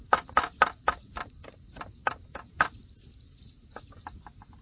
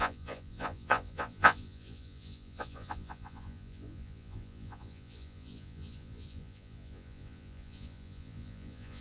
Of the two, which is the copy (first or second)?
second